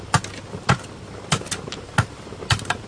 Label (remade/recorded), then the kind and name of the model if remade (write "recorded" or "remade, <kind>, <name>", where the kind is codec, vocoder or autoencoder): recorded